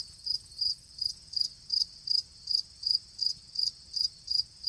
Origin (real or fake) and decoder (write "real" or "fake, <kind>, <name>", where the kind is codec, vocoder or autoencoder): real